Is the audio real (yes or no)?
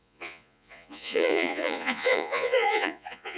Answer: no